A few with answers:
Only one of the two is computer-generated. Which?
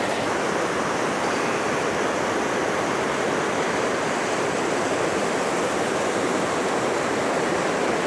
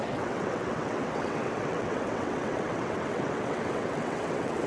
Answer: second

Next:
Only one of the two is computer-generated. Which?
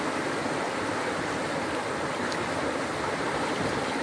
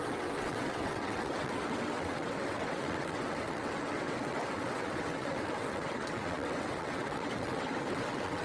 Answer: second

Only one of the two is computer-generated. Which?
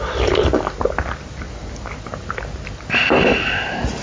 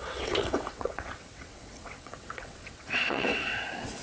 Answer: second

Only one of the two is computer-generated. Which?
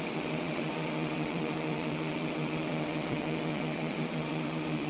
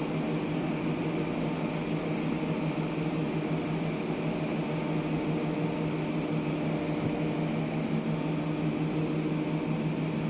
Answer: first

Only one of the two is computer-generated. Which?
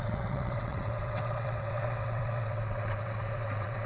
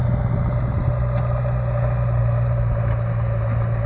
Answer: first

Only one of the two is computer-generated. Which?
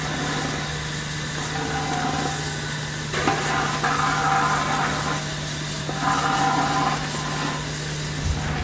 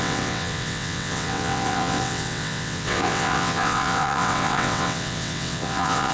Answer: second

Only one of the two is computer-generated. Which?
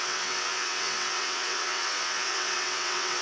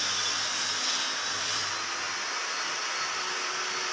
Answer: first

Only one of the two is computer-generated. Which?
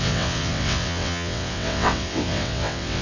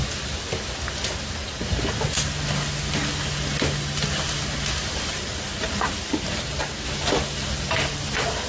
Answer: first